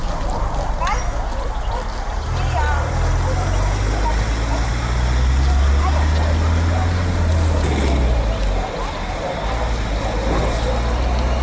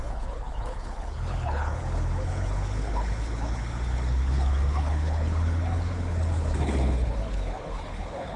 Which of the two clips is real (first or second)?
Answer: first